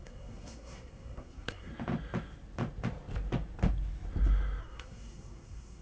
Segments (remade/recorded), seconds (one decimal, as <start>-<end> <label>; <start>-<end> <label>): 0.0-1.7 remade; 1.7-4.6 recorded; 4.6-5.8 remade